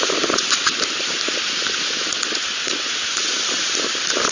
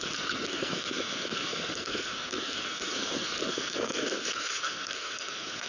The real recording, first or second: first